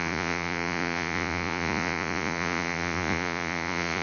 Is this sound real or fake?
fake